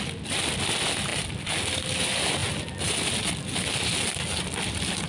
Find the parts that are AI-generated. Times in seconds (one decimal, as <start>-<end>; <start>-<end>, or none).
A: none